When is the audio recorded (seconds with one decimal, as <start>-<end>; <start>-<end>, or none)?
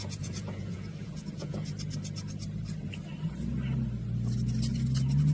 1.7-5.3